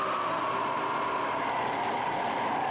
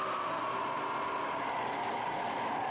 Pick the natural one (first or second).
second